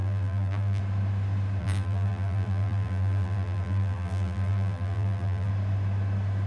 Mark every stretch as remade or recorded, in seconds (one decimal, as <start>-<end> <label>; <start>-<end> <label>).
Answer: 0.0-0.8 remade; 0.8-1.6 recorded; 1.6-5.5 remade; 5.5-6.5 recorded